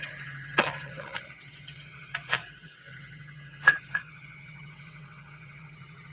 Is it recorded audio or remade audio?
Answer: remade